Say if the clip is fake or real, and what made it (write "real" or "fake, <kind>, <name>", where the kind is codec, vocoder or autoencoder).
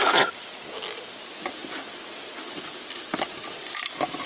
real